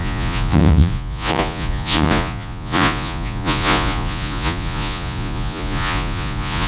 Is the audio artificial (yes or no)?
yes